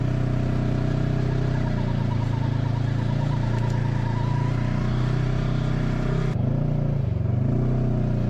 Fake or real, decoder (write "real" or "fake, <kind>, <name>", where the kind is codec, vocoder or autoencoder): real